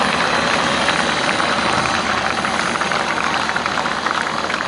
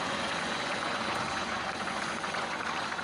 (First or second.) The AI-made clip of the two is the second